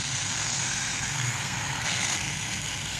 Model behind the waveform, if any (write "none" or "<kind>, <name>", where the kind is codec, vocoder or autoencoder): codec, SNAC